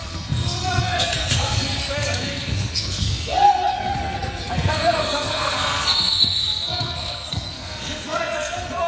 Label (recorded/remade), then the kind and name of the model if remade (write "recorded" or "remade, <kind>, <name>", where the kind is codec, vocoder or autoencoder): remade, codec, SNAC